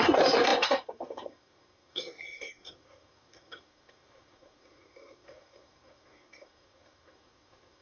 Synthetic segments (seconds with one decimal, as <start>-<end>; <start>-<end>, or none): 0.0-7.8